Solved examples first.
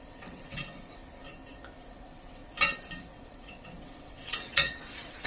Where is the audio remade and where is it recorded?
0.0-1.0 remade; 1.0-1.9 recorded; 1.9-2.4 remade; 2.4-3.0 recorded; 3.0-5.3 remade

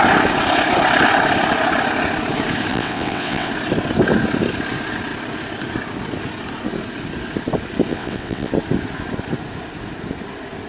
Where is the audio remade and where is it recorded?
0.0-2.7 recorded; 2.7-3.5 remade; 3.5-7.9 recorded; 7.9-8.5 remade; 8.5-10.7 recorded